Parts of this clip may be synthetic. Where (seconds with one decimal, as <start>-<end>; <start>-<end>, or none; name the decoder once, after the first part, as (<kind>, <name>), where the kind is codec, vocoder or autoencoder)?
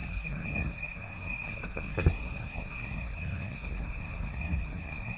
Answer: 0.0-5.2 (codec, SNAC)